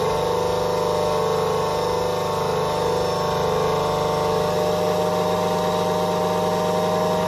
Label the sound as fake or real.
real